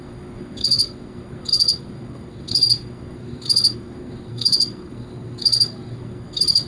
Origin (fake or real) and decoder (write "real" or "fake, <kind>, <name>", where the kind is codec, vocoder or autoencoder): fake, codec, SNAC